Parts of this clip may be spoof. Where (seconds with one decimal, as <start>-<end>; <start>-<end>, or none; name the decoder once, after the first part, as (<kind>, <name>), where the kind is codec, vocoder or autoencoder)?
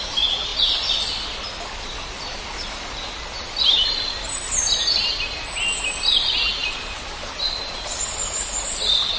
6.6-7.3 (vocoder, BigVGAN v2)